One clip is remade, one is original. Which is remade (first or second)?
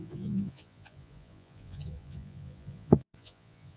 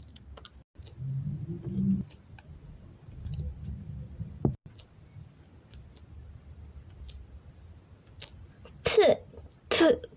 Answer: first